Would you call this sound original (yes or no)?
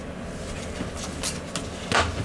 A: yes